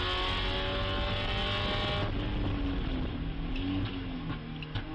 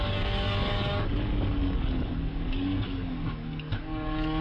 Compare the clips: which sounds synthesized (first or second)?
second